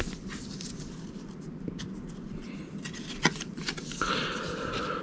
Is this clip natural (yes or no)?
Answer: yes